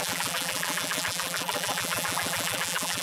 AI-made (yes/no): yes